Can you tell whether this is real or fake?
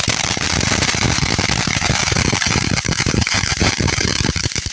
fake